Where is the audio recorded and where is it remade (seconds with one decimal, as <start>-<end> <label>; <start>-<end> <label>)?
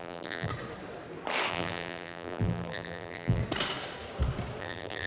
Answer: 0.0-0.5 remade; 0.5-1.5 recorded; 1.5-3.4 remade; 3.4-4.6 recorded; 4.6-5.1 remade